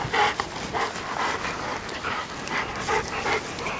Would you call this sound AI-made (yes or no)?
no